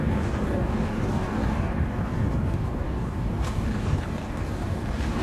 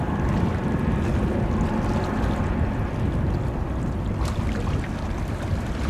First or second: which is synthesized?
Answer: first